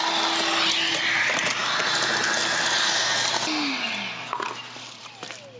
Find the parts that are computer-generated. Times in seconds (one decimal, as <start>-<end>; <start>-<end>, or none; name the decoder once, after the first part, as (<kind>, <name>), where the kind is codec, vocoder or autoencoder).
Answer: none

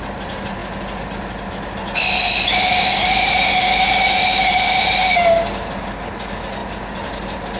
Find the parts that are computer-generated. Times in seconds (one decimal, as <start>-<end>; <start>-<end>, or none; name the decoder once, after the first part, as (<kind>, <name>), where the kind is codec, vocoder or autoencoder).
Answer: none

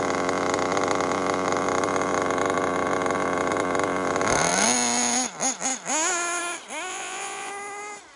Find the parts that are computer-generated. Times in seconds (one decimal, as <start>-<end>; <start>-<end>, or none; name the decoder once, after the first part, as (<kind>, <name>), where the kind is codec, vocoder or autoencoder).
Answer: 6.9-7.5 (vocoder, Vocos)

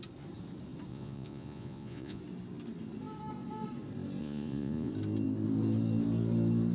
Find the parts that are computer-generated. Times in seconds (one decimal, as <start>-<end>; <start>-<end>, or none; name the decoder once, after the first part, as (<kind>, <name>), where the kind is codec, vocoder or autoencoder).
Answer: 0.9-2.2 (vocoder, Vocos); 4.2-4.9

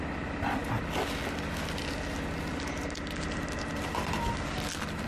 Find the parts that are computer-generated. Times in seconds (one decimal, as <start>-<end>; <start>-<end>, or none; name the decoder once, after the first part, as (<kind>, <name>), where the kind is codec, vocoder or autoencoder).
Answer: none

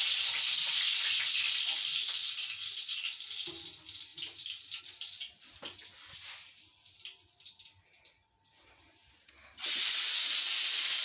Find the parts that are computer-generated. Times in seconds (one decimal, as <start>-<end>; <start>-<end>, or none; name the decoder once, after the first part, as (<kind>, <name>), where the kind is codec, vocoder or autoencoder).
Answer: none

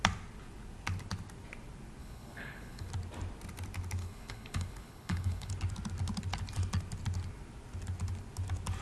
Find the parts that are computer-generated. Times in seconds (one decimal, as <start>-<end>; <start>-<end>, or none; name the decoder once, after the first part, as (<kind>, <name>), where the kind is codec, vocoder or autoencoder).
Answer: 2.0-2.9 (codec, HILCodec); 4.0-5.5

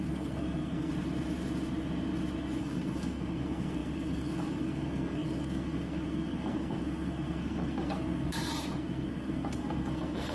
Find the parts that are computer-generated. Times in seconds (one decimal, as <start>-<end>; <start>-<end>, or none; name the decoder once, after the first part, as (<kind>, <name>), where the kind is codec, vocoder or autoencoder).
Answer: 0.0-0.9 (codec, SNAC); 2.6-10.3